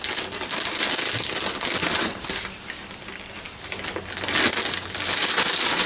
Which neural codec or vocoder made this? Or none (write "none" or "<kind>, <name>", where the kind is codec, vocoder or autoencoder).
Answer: none